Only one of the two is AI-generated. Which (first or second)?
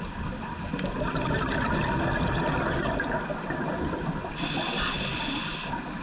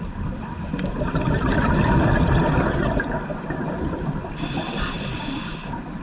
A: second